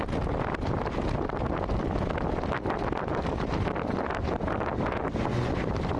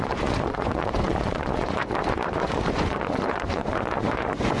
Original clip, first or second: first